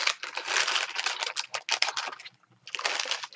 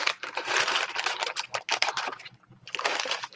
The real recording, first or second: first